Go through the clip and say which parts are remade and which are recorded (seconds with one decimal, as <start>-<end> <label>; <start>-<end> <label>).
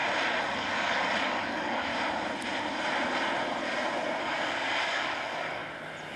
0.0-0.5 recorded; 0.5-1.9 remade; 1.9-4.2 recorded; 4.2-5.6 remade; 5.6-6.2 recorded